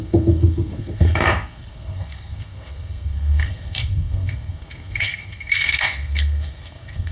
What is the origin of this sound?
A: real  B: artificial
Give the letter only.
B